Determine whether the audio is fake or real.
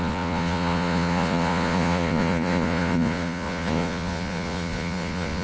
fake